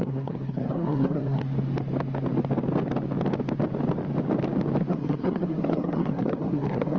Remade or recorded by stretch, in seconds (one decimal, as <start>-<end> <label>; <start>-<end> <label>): 0.0-1.4 remade; 1.4-4.9 recorded; 4.9-7.0 remade